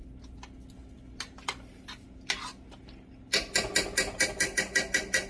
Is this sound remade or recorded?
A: recorded